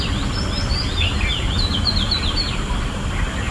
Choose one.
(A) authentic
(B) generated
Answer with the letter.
A